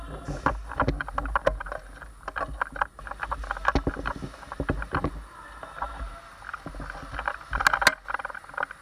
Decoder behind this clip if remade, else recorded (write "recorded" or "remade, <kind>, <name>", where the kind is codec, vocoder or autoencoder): recorded